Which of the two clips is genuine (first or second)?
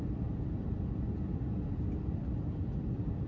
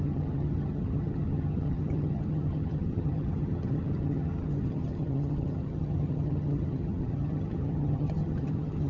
first